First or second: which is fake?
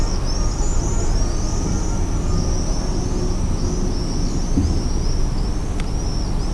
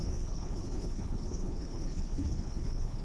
second